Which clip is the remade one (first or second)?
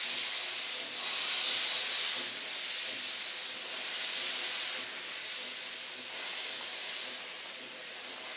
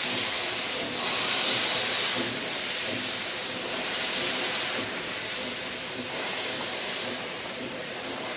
second